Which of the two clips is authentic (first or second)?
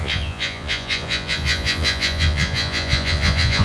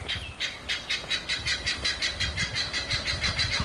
second